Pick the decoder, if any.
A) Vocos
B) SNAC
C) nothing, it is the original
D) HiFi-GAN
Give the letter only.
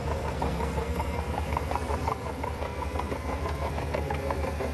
B